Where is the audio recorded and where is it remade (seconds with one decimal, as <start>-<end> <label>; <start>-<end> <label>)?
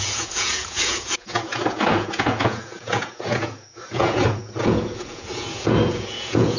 0.0-6.6 remade